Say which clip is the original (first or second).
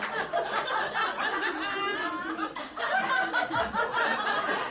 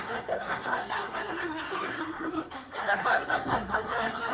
first